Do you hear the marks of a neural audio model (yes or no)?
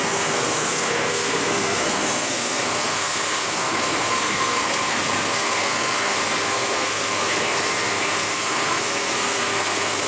yes